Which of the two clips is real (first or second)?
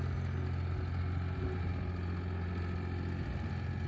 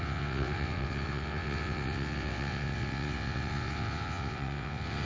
first